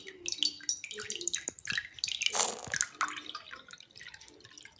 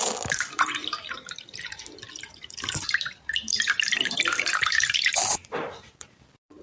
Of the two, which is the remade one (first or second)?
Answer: second